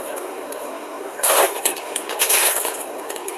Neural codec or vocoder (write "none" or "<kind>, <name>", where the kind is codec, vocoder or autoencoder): codec, SNAC